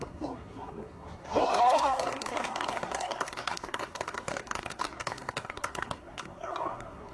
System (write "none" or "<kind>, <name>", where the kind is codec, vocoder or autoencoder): codec, SNAC